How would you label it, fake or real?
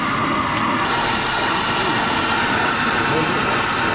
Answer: real